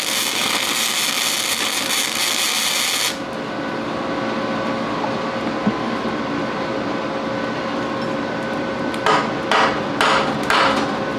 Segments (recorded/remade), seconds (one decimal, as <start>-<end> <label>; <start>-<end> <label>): 0.0-11.2 recorded